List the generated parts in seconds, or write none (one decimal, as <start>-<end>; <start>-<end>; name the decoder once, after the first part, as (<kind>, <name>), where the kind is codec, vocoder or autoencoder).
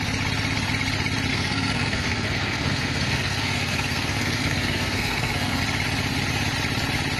1.3-5.6 (codec, SNAC)